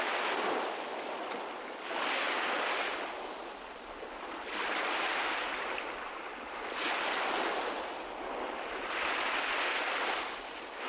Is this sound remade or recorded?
recorded